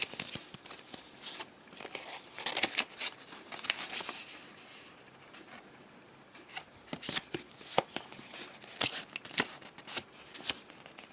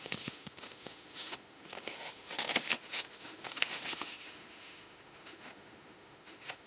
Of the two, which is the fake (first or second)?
second